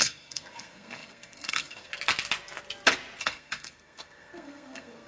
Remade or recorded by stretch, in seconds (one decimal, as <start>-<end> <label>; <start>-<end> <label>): 0.0-1.9 remade; 1.9-3.2 recorded; 3.2-5.1 remade